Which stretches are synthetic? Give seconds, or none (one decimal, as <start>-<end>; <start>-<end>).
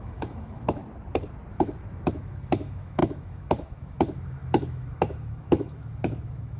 0.0-0.8; 1.5-6.6